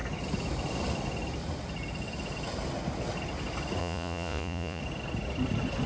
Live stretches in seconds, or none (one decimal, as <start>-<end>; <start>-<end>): 0.0-3.8; 4.8-5.9